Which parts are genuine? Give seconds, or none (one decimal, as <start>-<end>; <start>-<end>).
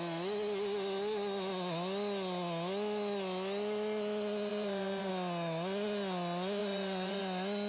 0.0-4.5; 5.1-6.6; 7.2-7.7